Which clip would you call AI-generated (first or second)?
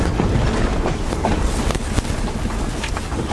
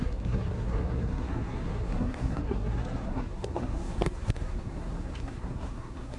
second